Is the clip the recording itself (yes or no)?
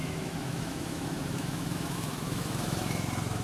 no